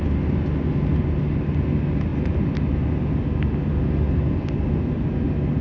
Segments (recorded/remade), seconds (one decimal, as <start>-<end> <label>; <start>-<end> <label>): 0.0-5.6 recorded